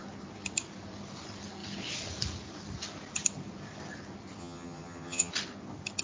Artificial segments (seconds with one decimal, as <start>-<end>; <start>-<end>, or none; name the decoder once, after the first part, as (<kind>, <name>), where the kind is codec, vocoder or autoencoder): 4.4-5.3 (vocoder, HiFi-GAN)